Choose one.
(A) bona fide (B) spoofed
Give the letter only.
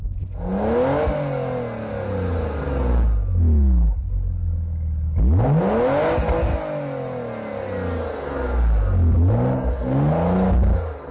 A